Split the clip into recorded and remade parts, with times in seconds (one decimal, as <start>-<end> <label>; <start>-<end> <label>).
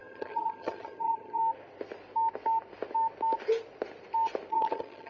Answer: 0.0-1.4 remade; 1.4-4.5 recorded; 4.5-5.1 remade